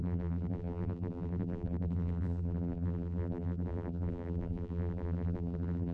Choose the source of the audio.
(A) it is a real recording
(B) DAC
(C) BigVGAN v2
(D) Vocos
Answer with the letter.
C